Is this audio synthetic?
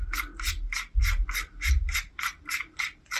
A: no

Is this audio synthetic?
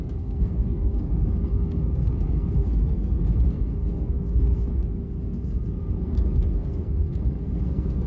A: yes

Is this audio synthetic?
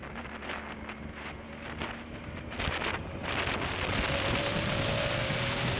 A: no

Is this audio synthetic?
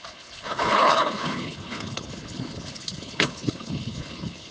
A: yes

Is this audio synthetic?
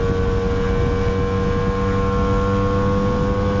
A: no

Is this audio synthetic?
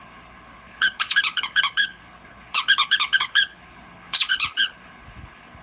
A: yes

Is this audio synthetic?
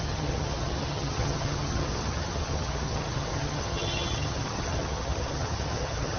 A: yes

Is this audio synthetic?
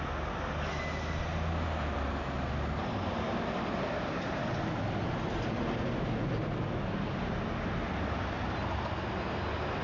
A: no